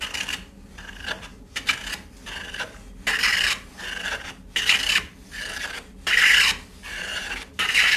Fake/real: fake